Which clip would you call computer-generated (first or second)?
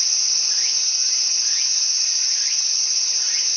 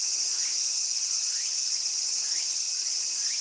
second